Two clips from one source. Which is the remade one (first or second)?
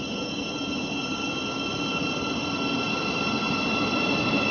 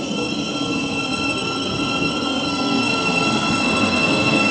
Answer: second